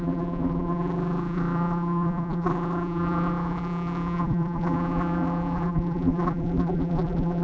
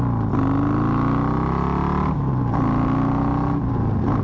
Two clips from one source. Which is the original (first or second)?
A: second